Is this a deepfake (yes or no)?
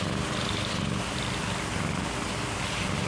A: no